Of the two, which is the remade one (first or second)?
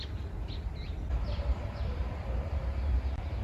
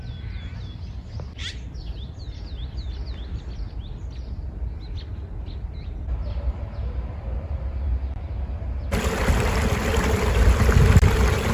first